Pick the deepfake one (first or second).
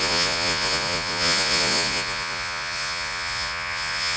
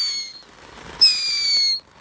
first